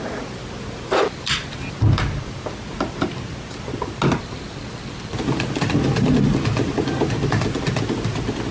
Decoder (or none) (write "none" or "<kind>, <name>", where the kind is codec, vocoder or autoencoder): none